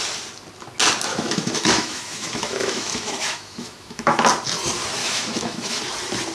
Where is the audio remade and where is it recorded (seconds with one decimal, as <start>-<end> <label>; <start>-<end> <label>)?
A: 0.0-1.1 recorded; 1.1-4.2 remade; 4.2-5.0 recorded; 5.0-5.8 remade; 5.8-6.3 recorded